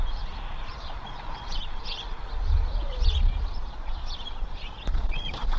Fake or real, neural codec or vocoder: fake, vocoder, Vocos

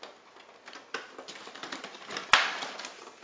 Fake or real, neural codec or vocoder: real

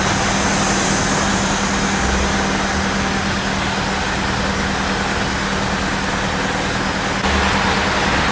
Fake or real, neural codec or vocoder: real